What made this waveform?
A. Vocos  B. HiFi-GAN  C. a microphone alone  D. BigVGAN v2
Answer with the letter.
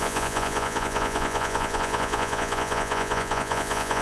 A